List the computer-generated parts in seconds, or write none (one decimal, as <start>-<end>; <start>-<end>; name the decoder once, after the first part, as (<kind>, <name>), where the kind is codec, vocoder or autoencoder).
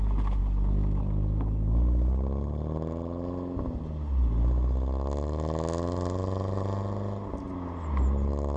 none